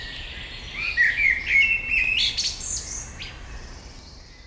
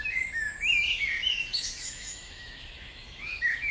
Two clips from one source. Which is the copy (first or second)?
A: second